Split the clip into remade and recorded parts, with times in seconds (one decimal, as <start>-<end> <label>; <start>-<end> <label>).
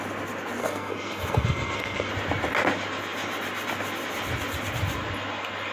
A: 0.0-0.6 recorded; 0.6-2.1 remade; 2.1-5.7 recorded